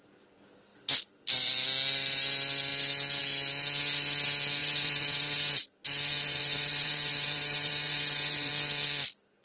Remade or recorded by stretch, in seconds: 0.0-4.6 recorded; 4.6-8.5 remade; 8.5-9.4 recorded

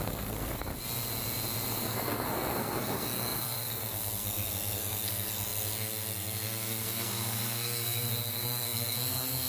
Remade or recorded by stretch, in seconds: 0.0-0.7 remade; 0.7-1.7 recorded; 1.7-9.5 remade

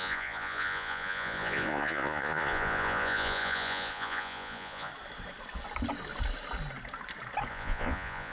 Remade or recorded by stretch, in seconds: 0.0-4.9 remade; 4.9-7.5 recorded; 7.5-8.3 remade

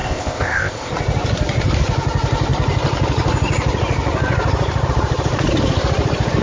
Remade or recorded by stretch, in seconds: 0.0-0.9 remade; 0.9-6.4 recorded

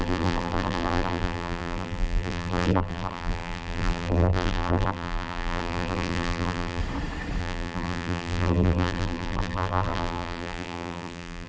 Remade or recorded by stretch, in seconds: 0.0-6.8 remade; 6.8-7.4 recorded; 7.4-11.5 remade

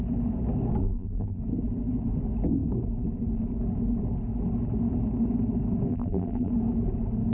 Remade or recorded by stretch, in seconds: 0.0-0.8 recorded; 0.8-1.4 remade; 1.4-5.9 recorded; 5.9-6.5 remade; 6.5-7.3 recorded

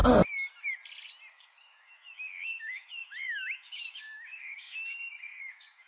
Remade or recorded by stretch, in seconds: 0.0-1.3 recorded; 1.3-5.9 remade

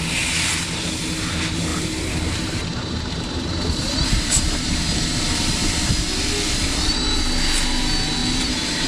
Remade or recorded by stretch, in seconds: 0.0-1.7 recorded; 1.7-5.9 remade; 5.9-8.2 recorded; 8.2-8.9 remade